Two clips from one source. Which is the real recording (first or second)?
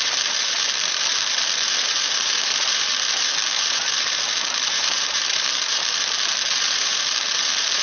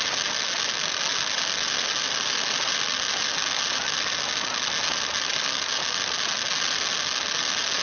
second